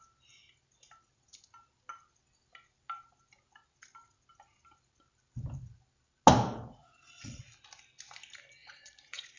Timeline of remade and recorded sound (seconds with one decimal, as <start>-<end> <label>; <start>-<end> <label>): 0.0-6.8 recorded; 6.8-7.4 remade; 7.4-8.6 recorded; 8.6-9.4 remade